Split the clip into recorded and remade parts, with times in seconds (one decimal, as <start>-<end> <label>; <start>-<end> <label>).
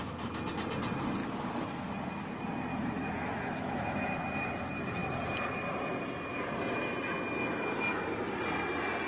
0.0-1.2 recorded; 1.2-1.9 remade; 1.9-2.7 recorded; 2.7-4.1 remade; 4.1-9.1 recorded